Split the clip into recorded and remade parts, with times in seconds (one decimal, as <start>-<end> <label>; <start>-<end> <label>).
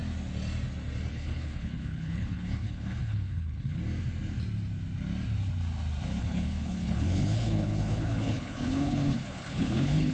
0.0-1.1 recorded; 1.1-3.8 remade; 3.8-6.2 recorded; 6.2-10.1 remade